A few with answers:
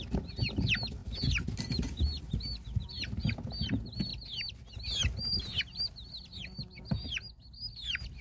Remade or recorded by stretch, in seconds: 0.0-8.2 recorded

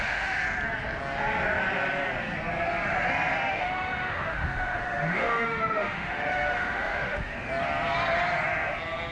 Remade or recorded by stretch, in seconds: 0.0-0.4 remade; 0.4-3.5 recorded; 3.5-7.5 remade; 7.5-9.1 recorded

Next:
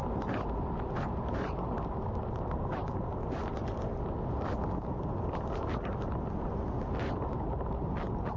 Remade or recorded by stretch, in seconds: 0.0-1.2 recorded; 1.2-2.8 remade; 2.8-7.1 recorded; 7.1-8.4 remade